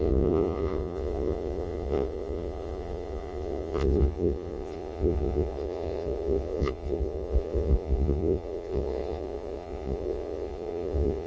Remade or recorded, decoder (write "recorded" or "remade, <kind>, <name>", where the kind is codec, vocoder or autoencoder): remade, vocoder, Vocos